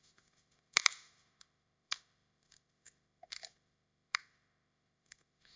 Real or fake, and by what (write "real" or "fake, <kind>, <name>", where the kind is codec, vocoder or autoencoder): fake, autoencoder, DAC-VAE